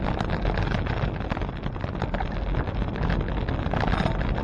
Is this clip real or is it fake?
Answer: real